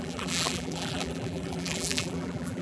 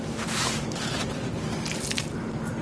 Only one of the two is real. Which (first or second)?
second